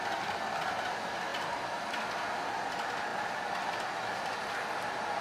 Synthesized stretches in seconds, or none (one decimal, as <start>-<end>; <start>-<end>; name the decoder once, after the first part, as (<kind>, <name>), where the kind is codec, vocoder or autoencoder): none